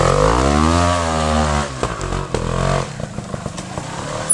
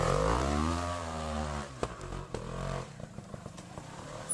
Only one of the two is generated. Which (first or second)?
second